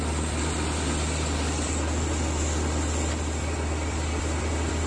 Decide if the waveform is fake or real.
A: real